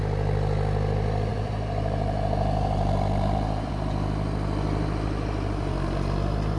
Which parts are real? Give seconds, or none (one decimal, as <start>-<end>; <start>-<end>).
0.0-1.3; 3.7-6.6